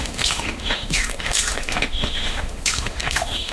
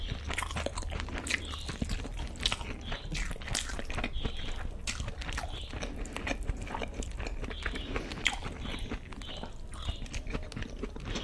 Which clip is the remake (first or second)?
first